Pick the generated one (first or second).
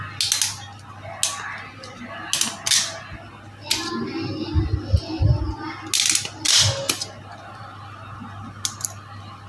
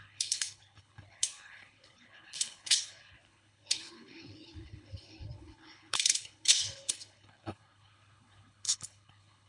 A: second